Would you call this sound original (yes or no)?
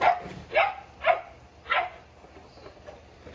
yes